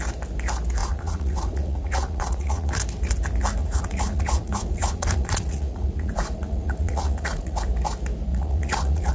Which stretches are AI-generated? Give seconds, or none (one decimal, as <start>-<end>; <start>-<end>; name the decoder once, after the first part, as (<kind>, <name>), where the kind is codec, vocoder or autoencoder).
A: 0.8-2.7 (vocoder, Vocos); 3.6-7.6; 8.3-9.1